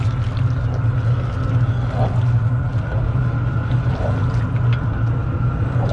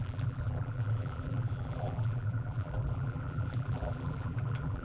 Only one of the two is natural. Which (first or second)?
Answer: first